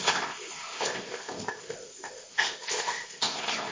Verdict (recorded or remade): remade